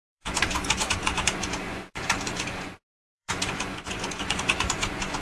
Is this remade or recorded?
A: remade